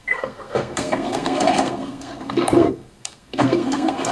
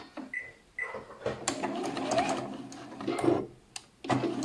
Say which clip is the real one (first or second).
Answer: second